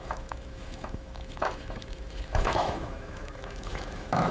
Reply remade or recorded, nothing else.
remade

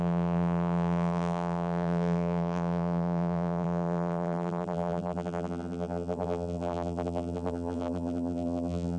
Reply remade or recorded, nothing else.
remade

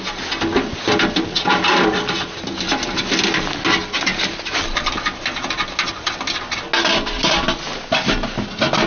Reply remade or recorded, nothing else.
recorded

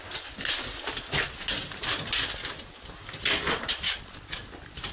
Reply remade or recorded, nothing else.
recorded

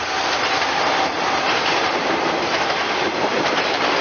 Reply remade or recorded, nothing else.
remade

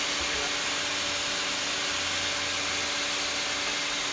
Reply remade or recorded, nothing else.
recorded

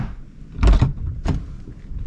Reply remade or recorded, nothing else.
recorded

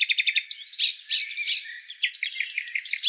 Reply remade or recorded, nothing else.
recorded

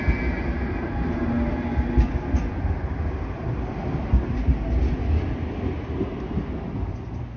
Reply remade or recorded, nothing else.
recorded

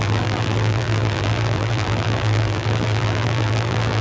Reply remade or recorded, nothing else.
remade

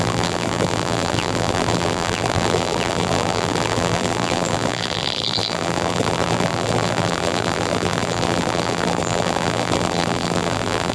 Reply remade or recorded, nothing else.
remade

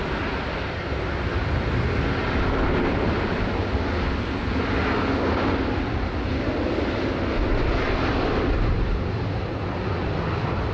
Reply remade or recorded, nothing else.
recorded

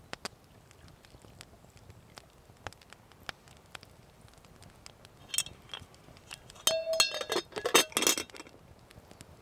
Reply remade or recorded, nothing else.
recorded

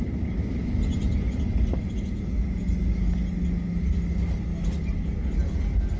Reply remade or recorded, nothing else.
recorded